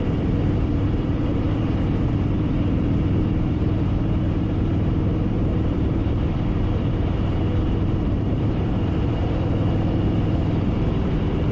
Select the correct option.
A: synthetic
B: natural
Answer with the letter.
A